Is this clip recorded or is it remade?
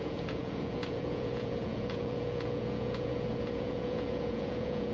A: remade